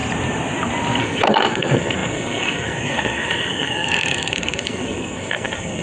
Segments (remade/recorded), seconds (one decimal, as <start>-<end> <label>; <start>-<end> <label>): 0.0-1.0 recorded; 1.0-5.8 remade